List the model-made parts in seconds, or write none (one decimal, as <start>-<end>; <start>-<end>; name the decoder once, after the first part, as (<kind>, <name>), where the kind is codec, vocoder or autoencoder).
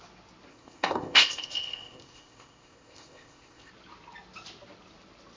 0.5-3.7 (codec, ZipCodec)